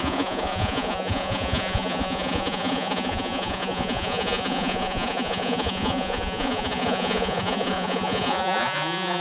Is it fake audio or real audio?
fake